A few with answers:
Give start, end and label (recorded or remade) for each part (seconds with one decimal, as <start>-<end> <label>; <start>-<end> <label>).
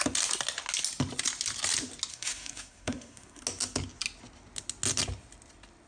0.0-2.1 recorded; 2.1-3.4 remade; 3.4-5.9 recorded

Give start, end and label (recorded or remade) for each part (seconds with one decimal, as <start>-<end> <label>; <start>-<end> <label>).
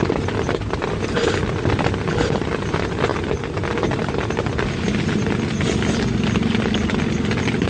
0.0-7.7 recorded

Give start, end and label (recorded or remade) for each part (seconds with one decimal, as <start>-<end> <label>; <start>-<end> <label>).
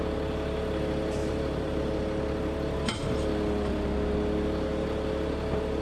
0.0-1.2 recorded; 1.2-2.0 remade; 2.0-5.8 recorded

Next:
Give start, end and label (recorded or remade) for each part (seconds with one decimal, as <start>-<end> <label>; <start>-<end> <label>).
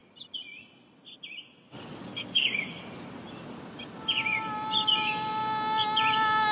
0.0-2.1 recorded; 2.1-2.8 remade; 2.8-6.5 recorded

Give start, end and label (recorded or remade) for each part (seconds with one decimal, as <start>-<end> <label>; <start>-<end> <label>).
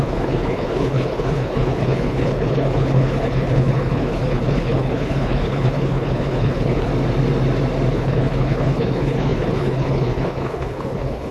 0.0-6.9 remade; 6.9-7.9 recorded; 7.9-11.3 remade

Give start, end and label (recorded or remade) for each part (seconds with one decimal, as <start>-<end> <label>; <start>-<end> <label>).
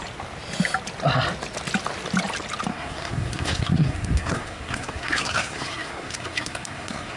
0.0-2.7 recorded; 2.7-7.2 remade